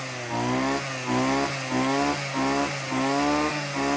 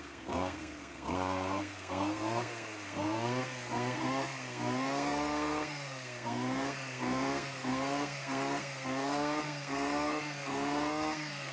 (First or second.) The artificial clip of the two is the second